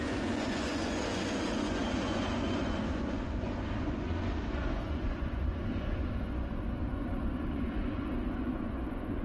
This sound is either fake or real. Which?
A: fake